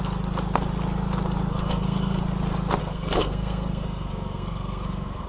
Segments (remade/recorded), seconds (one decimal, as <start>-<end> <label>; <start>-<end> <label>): 0.0-1.5 recorded; 1.5-2.2 remade; 2.2-2.8 recorded; 2.8-5.3 remade